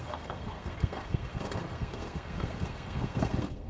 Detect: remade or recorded remade